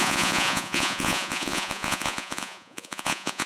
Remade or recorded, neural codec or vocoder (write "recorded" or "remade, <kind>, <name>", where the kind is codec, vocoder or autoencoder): remade, vocoder, Vocos